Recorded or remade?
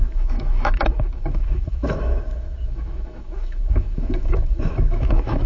remade